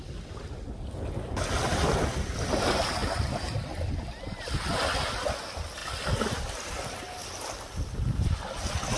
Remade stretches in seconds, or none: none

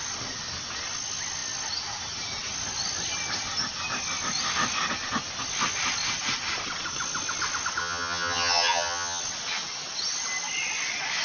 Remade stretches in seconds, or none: 7.8-9.2

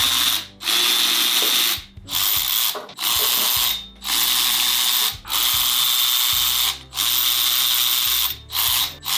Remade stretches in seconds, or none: none

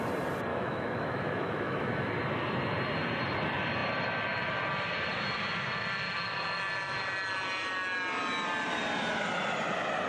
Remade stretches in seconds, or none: 0.5-2.1

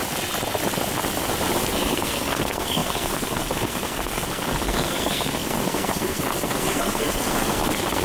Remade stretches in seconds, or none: 1.7-8.0

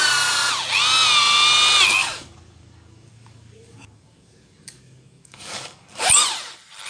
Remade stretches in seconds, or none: 2.0-6.1

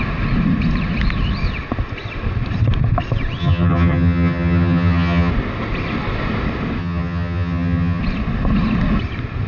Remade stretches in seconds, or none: 3.4-5.3; 6.8-8.0

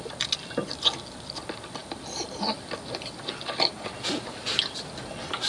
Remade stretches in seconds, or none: 1.8-5.1